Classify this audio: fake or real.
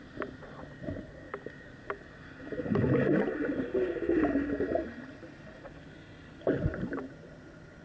real